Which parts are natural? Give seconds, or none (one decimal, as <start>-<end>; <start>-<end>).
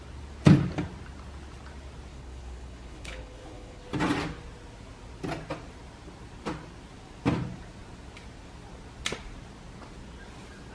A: 0.0-2.1; 3.8-10.7